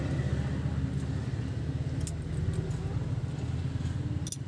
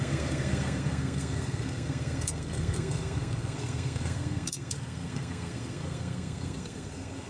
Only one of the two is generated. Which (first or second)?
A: second